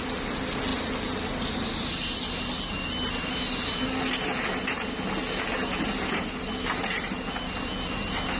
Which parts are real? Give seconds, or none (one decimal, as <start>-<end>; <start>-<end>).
0.0-8.4